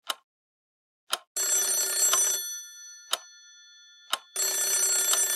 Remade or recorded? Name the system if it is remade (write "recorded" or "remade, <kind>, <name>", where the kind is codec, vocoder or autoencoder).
recorded